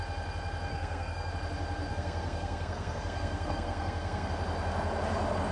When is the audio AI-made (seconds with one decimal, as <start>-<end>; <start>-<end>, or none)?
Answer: 0.7-1.3; 1.9-4.3